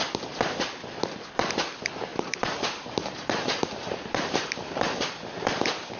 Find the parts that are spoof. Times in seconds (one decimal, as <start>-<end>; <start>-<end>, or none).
2.1-5.1